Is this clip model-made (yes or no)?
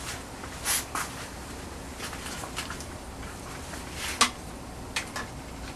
no